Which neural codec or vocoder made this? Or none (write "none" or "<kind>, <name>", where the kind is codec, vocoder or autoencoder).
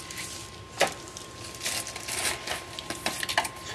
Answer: none